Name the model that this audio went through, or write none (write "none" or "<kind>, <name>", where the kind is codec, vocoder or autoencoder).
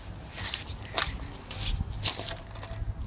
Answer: none